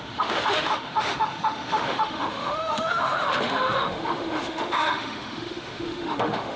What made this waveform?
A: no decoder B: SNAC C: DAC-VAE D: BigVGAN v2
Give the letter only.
C